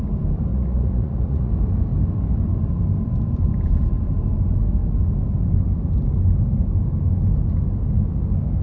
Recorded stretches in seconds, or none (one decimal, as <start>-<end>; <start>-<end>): 0.0-0.5; 1.5-8.6

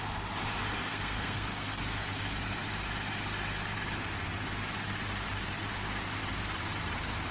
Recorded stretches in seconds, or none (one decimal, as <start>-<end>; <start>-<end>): 0.0-0.9; 1.8-7.3

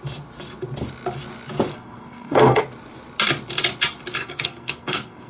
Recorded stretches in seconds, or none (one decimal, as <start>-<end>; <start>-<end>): 0.0-1.7; 2.6-4.2

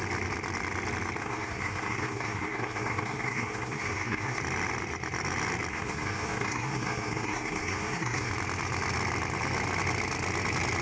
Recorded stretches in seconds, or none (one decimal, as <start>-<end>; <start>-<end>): 0.0-1.2; 4.4-5.7; 8.3-10.8

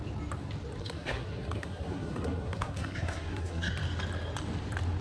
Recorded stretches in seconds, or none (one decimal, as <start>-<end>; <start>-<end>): 0.0-0.8; 3.7-5.0

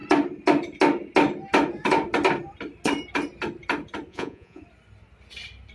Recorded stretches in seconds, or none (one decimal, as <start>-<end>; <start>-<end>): 0.0-4.1; 4.6-5.7

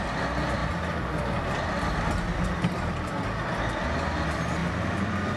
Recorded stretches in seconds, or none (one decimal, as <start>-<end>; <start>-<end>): 0.0-4.6

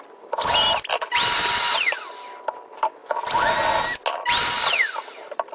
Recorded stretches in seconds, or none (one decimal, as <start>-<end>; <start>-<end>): 0.0-5.5